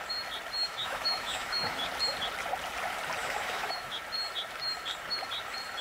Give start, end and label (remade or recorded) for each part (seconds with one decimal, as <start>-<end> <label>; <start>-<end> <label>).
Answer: 0.0-0.6 recorded; 0.6-1.9 remade; 1.9-3.2 recorded; 3.2-4.0 remade; 4.0-5.8 recorded